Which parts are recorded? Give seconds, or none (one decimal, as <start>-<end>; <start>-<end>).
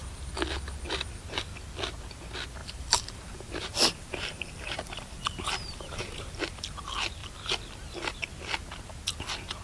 0.0-2.6; 6.4-9.6